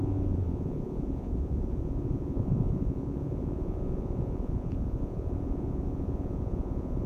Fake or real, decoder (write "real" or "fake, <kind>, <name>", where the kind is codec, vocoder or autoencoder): fake, vocoder, Vocos